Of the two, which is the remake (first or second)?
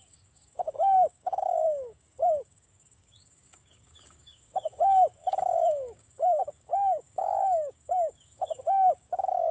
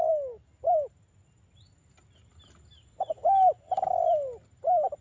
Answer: first